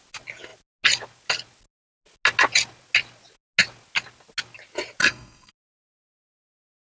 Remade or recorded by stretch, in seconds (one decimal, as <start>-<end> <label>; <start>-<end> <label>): 0.0-5.0 recorded; 5.0-5.5 remade; 5.5-6.8 recorded